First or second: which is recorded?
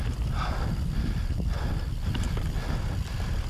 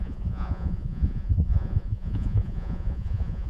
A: first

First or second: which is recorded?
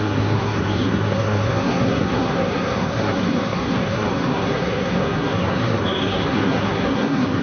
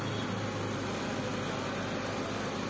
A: second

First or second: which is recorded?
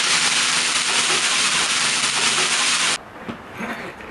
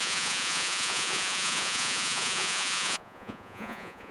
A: first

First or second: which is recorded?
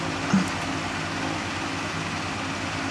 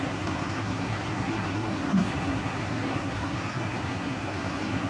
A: first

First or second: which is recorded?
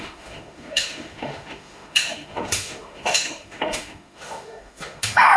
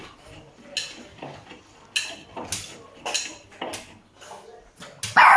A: second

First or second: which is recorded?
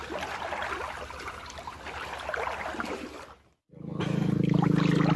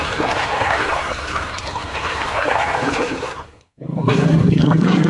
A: first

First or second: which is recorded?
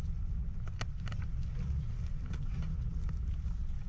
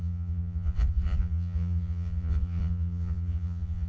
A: first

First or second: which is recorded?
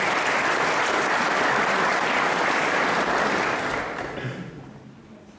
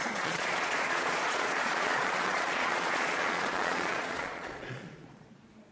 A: first